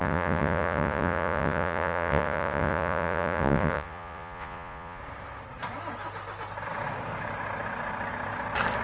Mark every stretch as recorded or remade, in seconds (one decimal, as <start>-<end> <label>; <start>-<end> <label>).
0.0-5.0 remade; 5.0-8.8 recorded

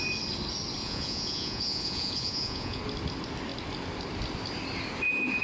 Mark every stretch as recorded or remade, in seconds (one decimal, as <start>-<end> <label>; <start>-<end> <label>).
0.0-0.8 recorded; 0.8-2.8 remade; 2.8-5.4 recorded

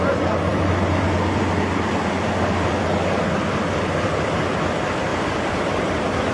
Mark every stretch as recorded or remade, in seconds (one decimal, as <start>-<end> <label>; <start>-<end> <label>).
0.0-0.5 recorded; 0.5-4.3 remade; 4.3-5.1 recorded; 5.1-5.8 remade; 5.8-6.3 recorded

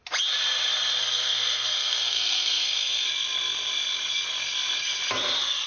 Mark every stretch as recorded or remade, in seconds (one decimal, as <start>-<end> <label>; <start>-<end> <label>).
0.0-1.0 recorded; 1.0-3.0 remade; 3.0-5.7 recorded

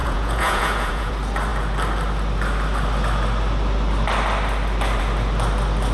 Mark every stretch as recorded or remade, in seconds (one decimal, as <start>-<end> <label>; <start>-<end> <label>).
0.0-1.1 remade; 1.1-5.9 recorded